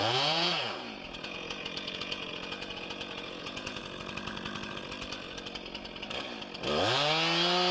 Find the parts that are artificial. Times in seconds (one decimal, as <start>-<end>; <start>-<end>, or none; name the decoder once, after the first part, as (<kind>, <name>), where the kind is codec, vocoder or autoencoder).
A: 0.0-3.8 (vocoder, Vocos)